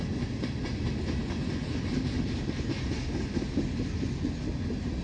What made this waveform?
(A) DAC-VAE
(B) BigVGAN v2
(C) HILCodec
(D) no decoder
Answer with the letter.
D